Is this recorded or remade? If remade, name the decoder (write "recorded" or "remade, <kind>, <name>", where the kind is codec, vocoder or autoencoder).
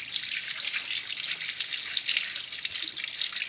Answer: recorded